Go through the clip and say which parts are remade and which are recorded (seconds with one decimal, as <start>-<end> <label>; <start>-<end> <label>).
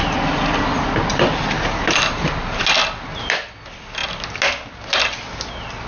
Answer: 0.0-1.1 recorded; 1.1-2.6 remade; 2.6-5.9 recorded